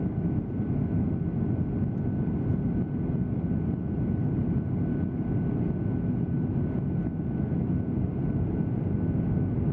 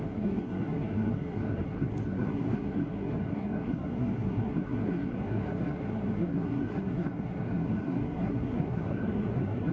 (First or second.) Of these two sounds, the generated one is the second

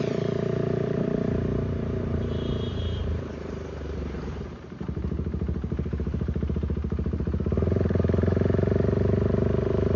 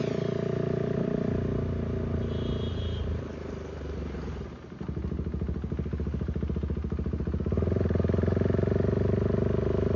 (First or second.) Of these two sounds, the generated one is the first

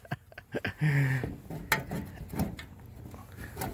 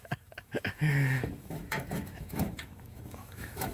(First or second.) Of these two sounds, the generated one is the second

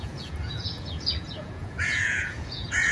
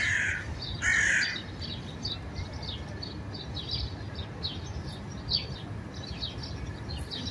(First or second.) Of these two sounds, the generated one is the first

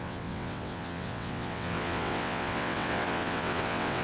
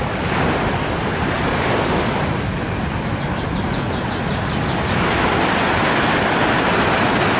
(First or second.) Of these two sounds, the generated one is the first